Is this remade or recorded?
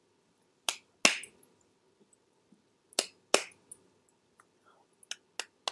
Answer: recorded